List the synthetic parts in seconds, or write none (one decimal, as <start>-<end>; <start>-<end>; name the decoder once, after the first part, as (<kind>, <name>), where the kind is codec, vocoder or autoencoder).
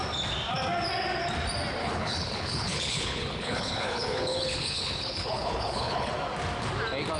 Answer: 1.8-6.1 (codec, HILCodec)